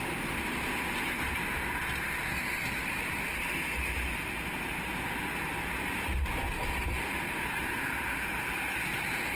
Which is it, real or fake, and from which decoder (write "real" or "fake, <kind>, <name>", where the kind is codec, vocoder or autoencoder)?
real